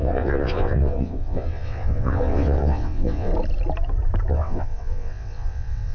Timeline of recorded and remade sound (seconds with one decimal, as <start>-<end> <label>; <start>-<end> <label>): 0.0-3.3 remade; 3.3-4.3 recorded; 4.3-5.9 remade